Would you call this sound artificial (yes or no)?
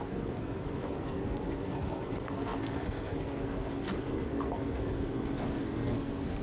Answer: yes